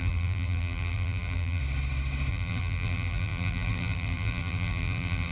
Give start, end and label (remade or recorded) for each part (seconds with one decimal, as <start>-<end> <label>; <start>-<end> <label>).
0.0-1.6 remade; 1.6-2.3 recorded; 2.3-5.3 remade

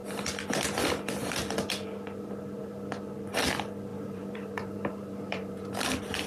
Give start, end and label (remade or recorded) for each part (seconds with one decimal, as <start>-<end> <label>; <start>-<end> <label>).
0.0-3.9 recorded; 3.9-5.8 remade; 5.8-6.3 recorded

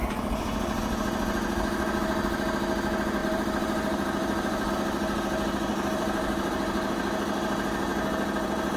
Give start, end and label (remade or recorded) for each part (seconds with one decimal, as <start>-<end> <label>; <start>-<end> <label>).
0.0-3.2 recorded; 3.2-4.7 remade; 4.7-5.7 recorded; 5.7-7.0 remade; 7.0-8.8 recorded

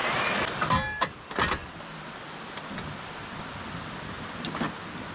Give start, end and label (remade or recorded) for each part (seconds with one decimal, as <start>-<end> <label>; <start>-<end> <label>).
0.0-5.1 recorded